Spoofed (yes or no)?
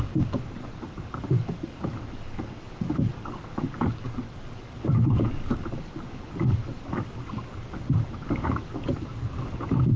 yes